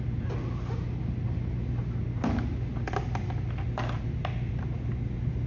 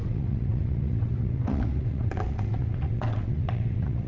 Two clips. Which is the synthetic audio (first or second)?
second